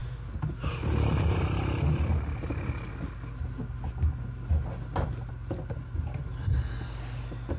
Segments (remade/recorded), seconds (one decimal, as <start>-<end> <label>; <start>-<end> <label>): 0.0-7.6 recorded